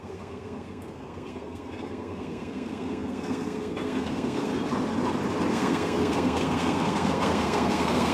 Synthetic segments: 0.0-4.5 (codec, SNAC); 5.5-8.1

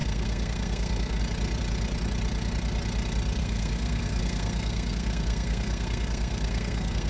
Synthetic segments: 0.0-1.2 (codec, SNAC); 3.4-7.1

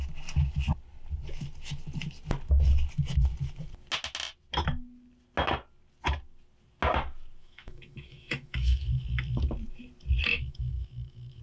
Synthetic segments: 7.4-9.4 (autoencoder, DAC-VAE); 10.3-11.4